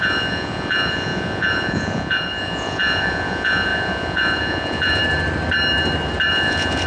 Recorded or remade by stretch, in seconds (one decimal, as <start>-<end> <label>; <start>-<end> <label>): 0.0-5.0 remade; 5.0-6.3 recorded; 6.3-6.9 remade